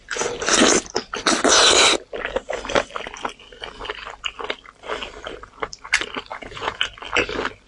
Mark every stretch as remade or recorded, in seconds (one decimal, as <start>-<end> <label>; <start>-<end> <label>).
0.0-6.3 recorded; 6.3-6.8 remade; 6.8-7.7 recorded